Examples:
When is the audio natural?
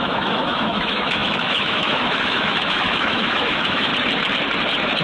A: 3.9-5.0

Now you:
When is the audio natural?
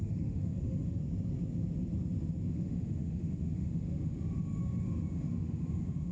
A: 1.0-2.4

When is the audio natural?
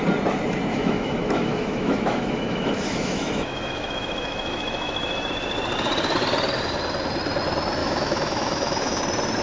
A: 0.0-0.7; 5.3-7.8; 9.0-9.4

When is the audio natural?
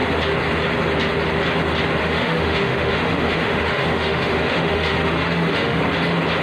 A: 0.0-2.0; 5.8-6.4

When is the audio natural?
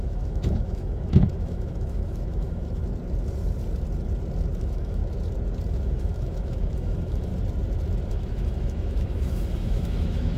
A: 2.8-4.6; 5.0-5.7; 7.3-8.1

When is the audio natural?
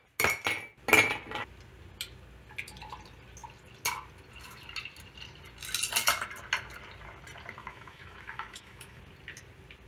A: 0.0-7.6; 9.0-9.9